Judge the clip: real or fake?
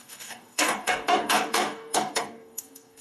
fake